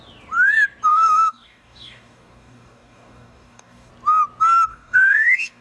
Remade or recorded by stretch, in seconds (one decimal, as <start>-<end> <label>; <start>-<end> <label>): 0.0-0.9 recorded; 0.9-3.9 remade; 3.9-4.7 recorded; 4.7-5.6 remade

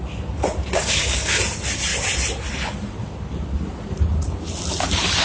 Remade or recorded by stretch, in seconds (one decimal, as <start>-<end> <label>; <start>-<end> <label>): 0.0-0.6 recorded; 0.6-1.4 remade; 1.4-5.2 recorded